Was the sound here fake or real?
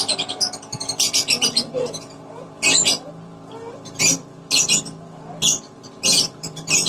fake